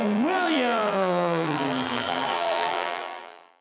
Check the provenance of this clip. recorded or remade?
remade